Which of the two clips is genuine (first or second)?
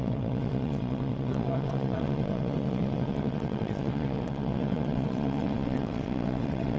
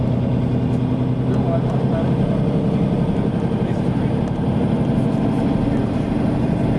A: second